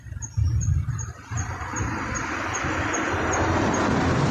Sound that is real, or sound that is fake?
real